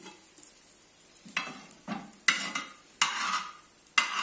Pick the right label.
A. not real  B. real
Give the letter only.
B